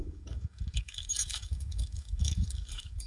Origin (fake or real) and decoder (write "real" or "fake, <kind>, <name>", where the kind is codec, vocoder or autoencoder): fake, codec, DAC